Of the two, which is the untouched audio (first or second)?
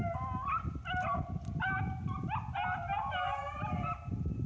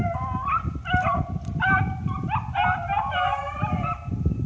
first